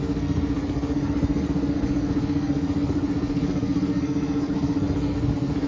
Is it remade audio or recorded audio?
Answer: remade